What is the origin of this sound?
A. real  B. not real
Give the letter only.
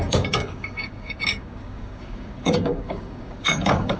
B